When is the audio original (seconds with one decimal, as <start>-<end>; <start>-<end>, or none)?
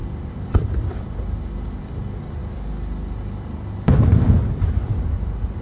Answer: 0.0-5.6